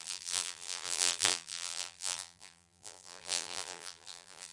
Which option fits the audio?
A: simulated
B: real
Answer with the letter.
A